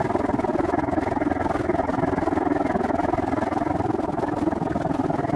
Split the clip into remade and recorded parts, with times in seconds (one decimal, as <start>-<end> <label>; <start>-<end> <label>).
0.0-5.4 recorded